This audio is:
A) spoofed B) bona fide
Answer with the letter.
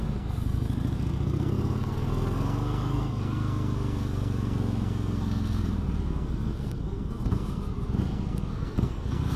A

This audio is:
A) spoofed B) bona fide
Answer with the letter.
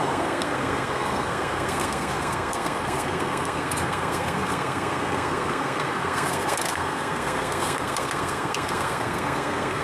A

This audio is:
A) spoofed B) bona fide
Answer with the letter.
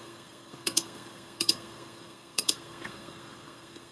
A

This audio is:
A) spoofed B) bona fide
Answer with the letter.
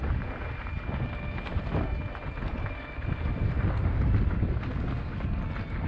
B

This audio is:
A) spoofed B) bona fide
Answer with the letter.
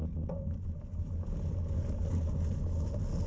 B